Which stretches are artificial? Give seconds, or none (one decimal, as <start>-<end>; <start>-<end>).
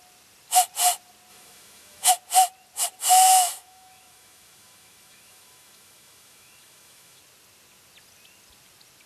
1.3-2.1; 3.0-7.2